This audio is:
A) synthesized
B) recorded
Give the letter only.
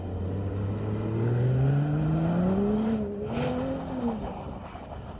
B